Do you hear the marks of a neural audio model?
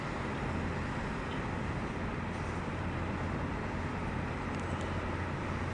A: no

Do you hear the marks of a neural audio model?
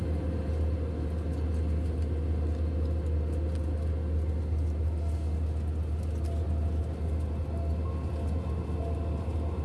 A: no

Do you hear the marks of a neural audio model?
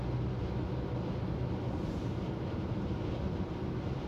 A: no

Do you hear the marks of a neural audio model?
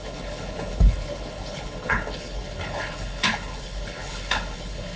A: yes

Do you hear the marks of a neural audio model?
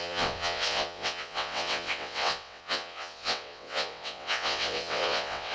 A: yes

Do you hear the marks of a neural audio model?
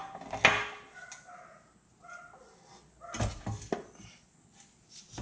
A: no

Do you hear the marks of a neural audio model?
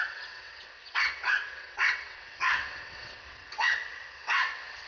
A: yes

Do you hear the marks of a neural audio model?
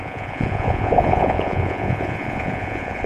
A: yes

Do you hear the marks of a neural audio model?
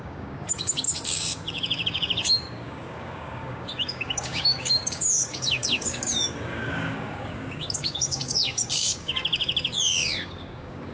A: yes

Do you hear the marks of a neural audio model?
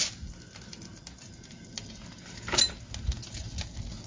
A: no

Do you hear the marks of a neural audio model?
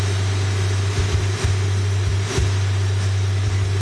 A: no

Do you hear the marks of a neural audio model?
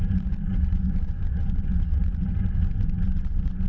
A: yes